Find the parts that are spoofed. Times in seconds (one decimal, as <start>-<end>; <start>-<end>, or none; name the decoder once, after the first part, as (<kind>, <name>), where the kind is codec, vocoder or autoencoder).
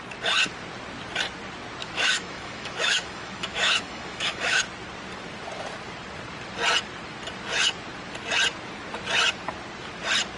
1.8-4.6 (autoencoder, DAC-VAE)